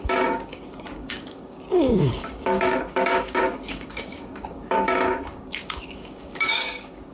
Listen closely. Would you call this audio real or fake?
fake